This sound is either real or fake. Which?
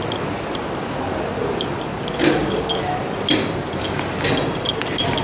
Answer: real